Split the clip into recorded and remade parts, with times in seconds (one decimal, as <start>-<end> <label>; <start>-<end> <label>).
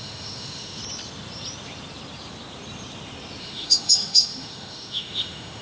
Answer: 0.0-0.8 remade; 0.8-3.4 recorded; 3.4-5.6 remade